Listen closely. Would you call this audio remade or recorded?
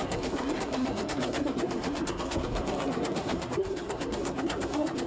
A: remade